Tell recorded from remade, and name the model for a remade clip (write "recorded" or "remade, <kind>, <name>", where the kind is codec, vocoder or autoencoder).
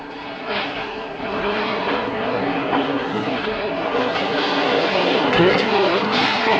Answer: remade, codec, SNAC